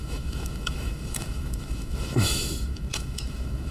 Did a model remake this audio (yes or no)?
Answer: yes